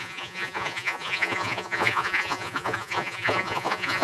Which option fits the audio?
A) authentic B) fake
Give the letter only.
B